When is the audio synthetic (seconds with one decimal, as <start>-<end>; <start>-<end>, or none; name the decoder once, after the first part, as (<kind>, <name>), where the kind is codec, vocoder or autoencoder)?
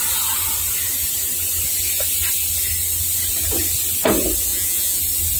4.5-5.0 (vocoder, Vocos)